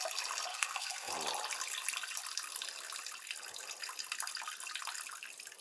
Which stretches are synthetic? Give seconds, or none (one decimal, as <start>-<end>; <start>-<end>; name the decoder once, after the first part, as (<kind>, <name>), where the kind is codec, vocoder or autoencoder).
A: 0.5-1.1 (codec, SNAC)